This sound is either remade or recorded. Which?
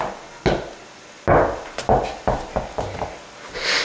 recorded